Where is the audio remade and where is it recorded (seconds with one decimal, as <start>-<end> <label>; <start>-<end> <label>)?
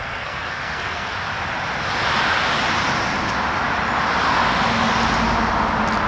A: 0.0-1.1 remade; 1.1-6.1 recorded